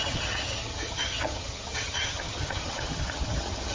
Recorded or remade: remade